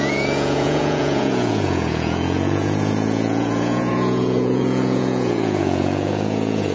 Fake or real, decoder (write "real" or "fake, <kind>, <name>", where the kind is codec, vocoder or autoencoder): fake, vocoder, Vocos